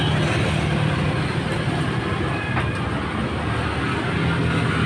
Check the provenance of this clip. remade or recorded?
recorded